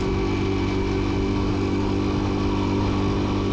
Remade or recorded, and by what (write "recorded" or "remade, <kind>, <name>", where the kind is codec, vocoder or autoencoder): recorded